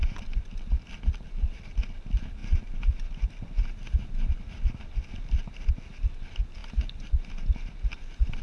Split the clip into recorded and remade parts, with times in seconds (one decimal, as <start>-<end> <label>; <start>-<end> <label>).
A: 0.0-8.4 recorded